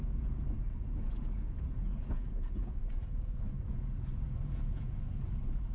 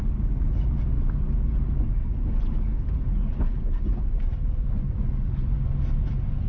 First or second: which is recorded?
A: second